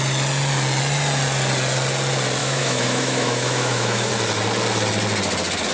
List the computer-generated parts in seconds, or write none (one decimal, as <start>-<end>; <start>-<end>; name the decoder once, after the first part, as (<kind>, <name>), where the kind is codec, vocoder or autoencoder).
2.4-4.1 (autoencoder, DAC-VAE)